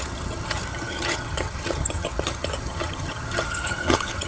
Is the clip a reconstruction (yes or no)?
yes